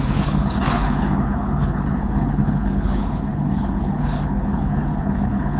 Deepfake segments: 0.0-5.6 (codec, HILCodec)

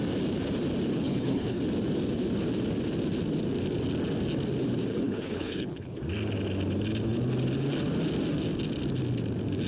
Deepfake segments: 0.9-1.6 (codec, HILCodec); 4.9-6.0

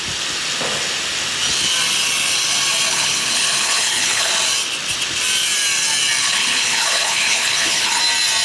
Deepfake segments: 2.9-4.3 (codec, HILCodec); 6.2-8.0

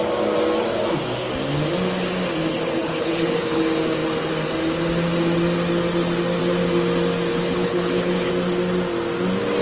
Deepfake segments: 2.5-3.6 (codec, HILCodec); 7.3-8.3

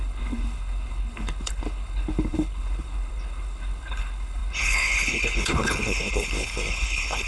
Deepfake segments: 0.0-7.3 (codec, HILCodec)